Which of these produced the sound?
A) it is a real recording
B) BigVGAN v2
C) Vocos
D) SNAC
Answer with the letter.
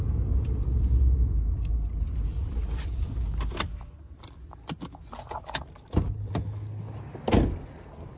A